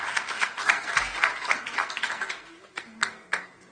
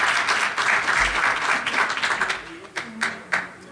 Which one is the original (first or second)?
second